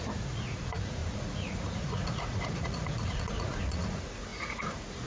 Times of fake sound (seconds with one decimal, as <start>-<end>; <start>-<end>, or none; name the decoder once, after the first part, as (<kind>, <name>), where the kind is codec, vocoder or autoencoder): 0.0-5.1 (vocoder, Vocos)